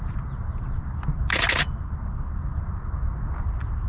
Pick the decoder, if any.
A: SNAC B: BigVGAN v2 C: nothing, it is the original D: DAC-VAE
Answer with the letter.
C